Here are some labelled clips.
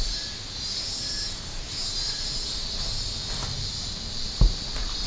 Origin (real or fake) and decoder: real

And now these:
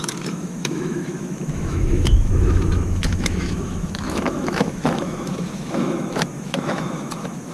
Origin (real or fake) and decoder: fake, autoencoder, DAC-VAE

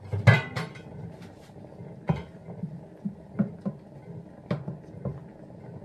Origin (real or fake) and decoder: real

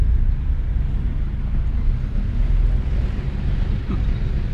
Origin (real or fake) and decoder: real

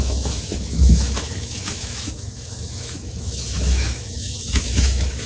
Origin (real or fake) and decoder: fake, autoencoder, DAC-VAE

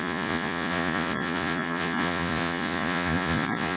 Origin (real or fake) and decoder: fake, vocoder, Vocos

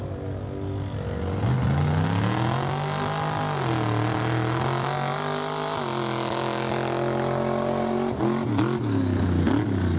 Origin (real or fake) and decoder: real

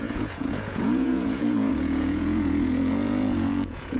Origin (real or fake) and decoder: fake, vocoder, Vocos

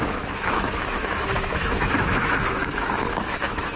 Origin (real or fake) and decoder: fake, autoencoder, DAC-VAE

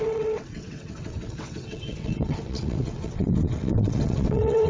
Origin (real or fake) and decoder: fake, vocoder, WaveNeXt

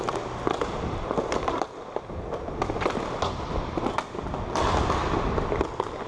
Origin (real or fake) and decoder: real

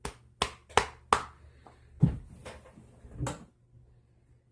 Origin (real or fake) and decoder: real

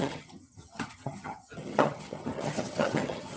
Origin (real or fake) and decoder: fake, vocoder, HiFi-GAN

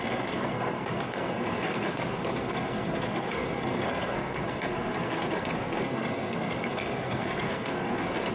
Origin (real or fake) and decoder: fake, codec, SNAC